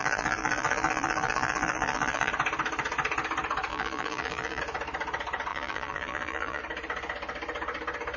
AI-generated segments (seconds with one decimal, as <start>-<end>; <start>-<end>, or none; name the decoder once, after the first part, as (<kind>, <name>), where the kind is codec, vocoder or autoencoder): 0.0-2.3 (vocoder, BigVGAN v2); 3.7-4.6; 5.5-6.6